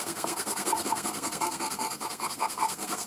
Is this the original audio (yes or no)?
no